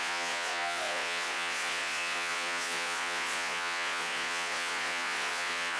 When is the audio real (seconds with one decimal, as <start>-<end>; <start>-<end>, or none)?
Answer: none

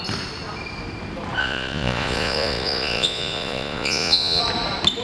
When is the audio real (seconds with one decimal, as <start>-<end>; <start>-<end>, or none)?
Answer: 0.0-1.4; 4.4-5.0

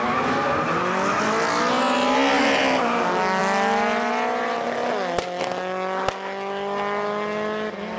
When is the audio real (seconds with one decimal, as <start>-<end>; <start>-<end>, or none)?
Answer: 0.0-8.0

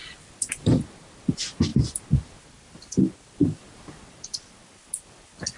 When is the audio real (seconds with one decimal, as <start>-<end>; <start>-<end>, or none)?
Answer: 0.0-5.6

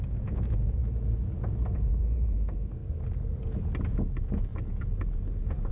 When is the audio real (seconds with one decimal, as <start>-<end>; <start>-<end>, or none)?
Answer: 2.8-3.9

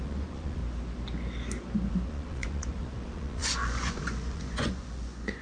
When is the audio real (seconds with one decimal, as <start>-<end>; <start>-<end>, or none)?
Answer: 0.6-1.9